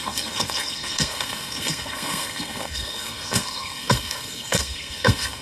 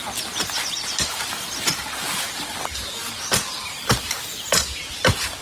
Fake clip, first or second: first